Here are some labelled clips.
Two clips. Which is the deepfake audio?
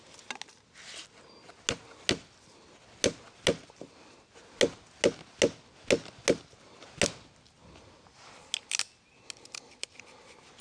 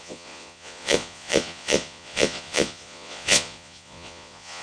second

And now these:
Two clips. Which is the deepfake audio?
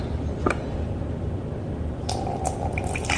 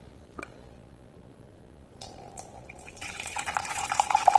second